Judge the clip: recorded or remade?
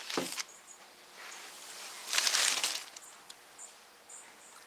recorded